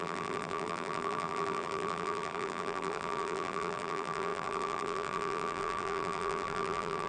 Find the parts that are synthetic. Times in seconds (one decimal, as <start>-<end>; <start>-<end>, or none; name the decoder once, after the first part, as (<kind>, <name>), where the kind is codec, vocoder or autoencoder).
0.0-7.1 (vocoder, BigVGAN v2)